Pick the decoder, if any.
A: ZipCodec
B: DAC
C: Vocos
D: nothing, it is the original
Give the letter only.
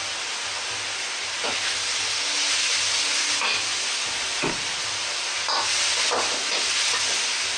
D